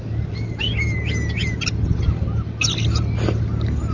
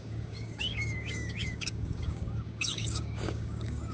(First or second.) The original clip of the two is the first